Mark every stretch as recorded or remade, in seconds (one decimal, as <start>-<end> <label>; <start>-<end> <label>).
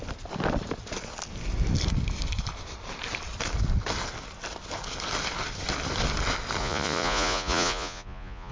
0.0-6.6 recorded; 6.6-8.5 remade